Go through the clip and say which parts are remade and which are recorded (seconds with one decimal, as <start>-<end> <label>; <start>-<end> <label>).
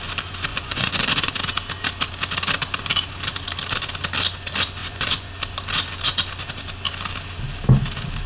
0.0-0.5 recorded; 0.5-1.3 remade; 1.3-4.8 recorded; 4.8-5.3 remade; 5.3-8.3 recorded